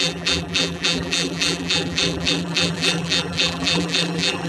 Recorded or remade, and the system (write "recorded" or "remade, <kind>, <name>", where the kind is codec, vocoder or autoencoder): remade, vocoder, BigVGAN v2